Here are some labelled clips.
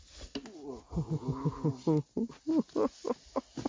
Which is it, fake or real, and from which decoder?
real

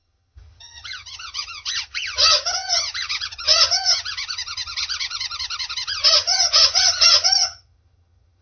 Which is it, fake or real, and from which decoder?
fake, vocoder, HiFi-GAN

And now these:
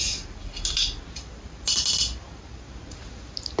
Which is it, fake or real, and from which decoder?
real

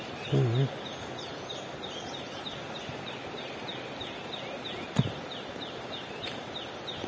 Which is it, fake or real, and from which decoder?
real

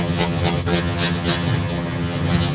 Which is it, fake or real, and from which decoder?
fake, vocoder, HiFi-GAN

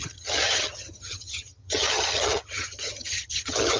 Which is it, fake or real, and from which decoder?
fake, vocoder, HiFi-GAN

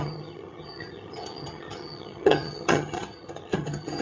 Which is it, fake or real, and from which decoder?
fake, vocoder, HiFi-GAN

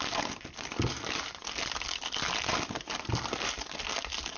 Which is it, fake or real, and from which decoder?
real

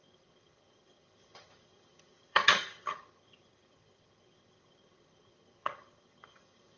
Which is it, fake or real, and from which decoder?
fake, vocoder, HiFi-GAN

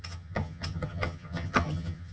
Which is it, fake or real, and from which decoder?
fake, vocoder, HiFi-GAN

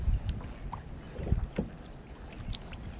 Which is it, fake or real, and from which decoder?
real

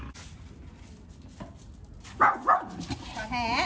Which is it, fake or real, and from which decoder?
real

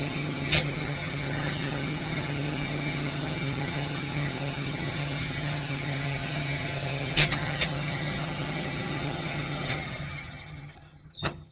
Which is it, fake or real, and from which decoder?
fake, vocoder, HiFi-GAN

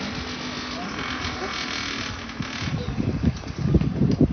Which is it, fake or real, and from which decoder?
real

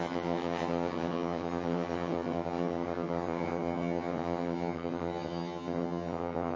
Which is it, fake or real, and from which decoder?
fake, vocoder, HiFi-GAN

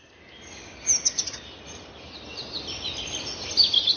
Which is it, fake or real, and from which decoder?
real